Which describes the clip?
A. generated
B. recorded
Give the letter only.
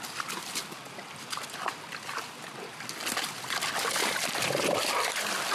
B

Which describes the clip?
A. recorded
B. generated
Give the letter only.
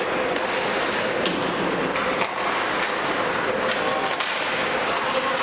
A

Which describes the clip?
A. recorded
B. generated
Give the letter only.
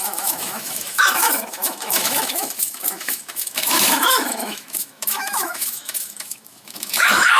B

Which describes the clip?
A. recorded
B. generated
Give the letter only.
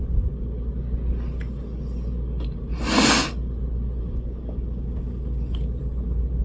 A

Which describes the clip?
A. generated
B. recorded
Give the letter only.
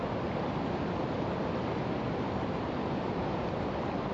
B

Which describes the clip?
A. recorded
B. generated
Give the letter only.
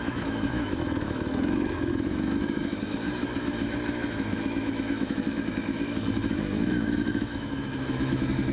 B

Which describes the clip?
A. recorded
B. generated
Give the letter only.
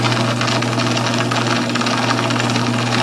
A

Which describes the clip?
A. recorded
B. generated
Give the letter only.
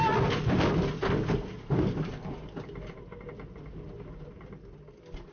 A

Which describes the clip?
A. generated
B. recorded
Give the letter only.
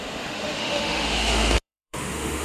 A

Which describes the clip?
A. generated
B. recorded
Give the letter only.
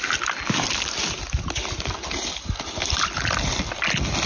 B